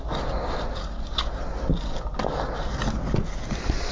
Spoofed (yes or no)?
no